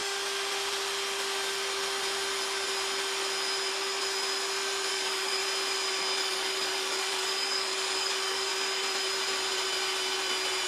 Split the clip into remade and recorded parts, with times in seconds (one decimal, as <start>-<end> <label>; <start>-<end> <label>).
0.0-4.9 recorded; 4.9-5.4 remade; 5.4-6.2 recorded; 6.2-8.5 remade; 8.5-10.7 recorded